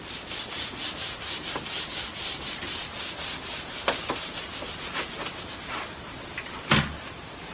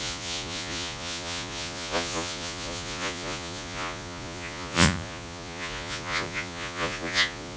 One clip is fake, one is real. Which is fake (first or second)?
second